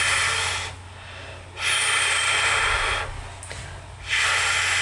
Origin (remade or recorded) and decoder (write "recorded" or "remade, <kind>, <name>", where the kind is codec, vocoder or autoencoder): recorded